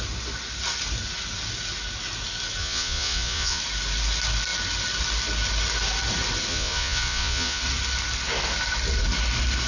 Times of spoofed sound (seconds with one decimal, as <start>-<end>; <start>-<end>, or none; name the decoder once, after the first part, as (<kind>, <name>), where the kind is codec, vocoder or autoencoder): 2.6-3.6 (vocoder, Vocos); 6.5-7.6